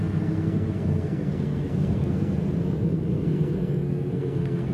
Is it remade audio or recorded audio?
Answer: remade